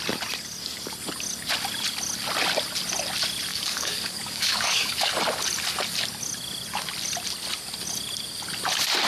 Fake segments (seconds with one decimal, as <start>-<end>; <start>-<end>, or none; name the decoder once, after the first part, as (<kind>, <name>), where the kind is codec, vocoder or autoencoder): 3.5-5.1 (codec, DAC)